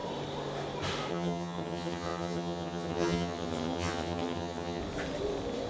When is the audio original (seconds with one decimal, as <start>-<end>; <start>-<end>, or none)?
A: 0.0-1.1; 4.8-5.7